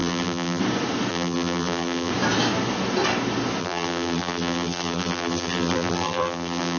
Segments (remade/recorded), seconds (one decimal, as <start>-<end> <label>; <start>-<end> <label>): 0.0-0.6 remade; 0.6-1.1 recorded; 1.1-2.1 remade; 2.1-3.6 recorded; 3.6-6.8 remade

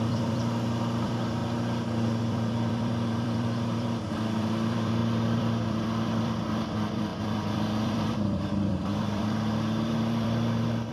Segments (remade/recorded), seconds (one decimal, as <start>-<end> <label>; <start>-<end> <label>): 0.0-1.4 remade; 1.4-2.2 recorded; 2.2-10.9 remade